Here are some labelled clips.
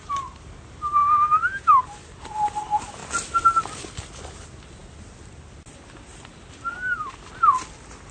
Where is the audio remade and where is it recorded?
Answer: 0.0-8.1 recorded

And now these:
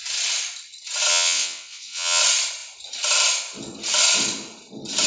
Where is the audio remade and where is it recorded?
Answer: 0.0-1.1 recorded; 1.1-2.2 remade; 2.2-5.1 recorded